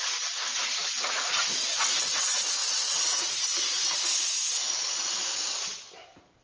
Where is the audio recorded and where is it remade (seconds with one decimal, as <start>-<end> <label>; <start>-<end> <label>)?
0.0-0.5 recorded; 0.5-2.2 remade; 2.2-2.6 recorded; 2.6-3.4 remade; 3.4-6.4 recorded